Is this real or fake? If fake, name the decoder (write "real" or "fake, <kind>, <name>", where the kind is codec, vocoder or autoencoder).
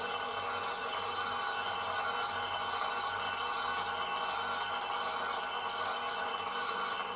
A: real